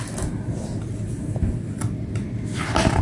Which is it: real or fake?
real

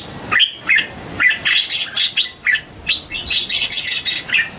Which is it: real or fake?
real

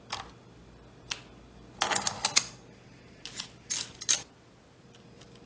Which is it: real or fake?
real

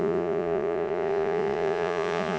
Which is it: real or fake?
fake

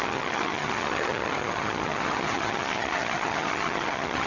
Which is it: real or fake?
fake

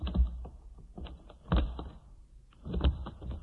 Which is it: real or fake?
real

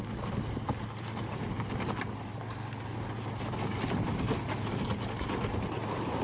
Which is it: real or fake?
real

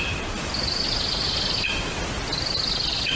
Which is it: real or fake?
real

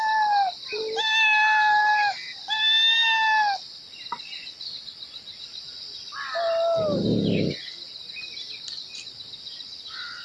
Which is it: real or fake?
real